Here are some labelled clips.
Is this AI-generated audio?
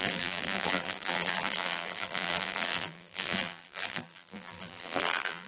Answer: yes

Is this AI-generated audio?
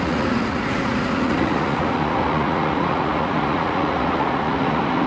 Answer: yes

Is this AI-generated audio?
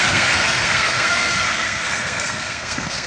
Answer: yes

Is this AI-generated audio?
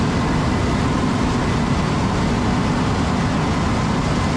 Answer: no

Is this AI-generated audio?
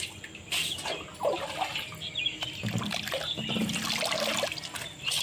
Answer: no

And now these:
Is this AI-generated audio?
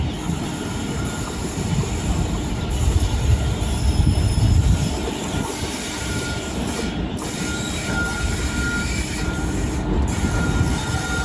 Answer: no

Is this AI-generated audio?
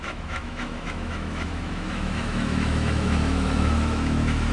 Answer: yes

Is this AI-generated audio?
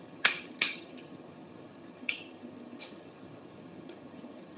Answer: yes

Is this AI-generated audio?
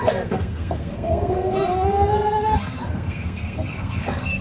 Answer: yes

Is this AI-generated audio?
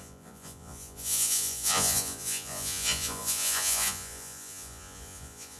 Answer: yes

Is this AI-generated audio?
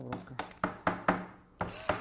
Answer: no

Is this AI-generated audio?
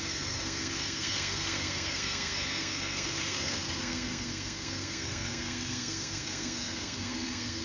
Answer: yes